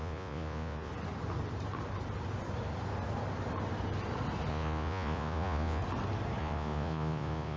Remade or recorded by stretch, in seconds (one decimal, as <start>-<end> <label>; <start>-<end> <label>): 0.0-0.9 remade; 0.9-4.5 recorded; 4.5-5.8 remade; 5.8-6.4 recorded; 6.4-7.6 remade